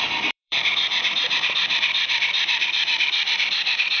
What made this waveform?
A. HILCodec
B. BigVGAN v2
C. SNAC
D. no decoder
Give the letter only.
B